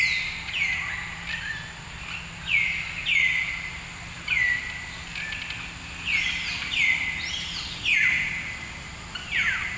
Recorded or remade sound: recorded